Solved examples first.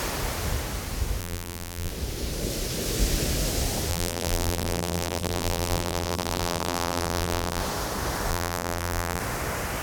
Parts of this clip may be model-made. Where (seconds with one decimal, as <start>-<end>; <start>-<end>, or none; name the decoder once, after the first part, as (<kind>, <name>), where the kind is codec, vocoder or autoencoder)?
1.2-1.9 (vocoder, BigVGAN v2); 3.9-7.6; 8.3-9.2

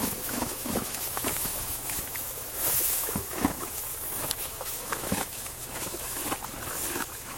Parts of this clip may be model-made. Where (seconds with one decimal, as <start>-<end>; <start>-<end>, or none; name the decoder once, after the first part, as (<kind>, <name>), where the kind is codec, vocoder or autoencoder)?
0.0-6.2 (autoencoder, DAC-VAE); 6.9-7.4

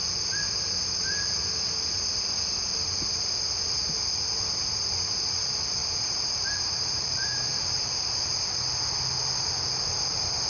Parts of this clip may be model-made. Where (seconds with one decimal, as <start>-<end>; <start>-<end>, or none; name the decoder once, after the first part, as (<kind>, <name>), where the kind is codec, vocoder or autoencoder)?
5.8-8.2 (vocoder, BigVGAN v2)

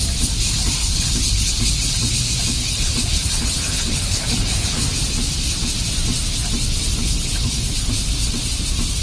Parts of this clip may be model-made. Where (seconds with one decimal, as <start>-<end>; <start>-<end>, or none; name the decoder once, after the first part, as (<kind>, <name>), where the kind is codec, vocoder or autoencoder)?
0.8-1.7 (codec, HILCodec); 2.6-4.9; 7.0-7.9

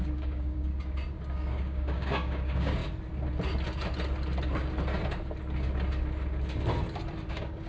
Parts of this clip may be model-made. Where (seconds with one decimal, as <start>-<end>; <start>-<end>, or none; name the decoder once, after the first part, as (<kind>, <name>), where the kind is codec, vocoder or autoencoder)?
0.0-0.7 (codec, DAC); 1.3-2.8; 7.3-7.7